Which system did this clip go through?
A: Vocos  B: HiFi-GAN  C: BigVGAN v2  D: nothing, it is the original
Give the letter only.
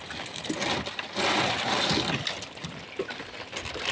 D